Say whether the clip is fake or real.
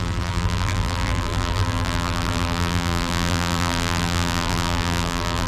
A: fake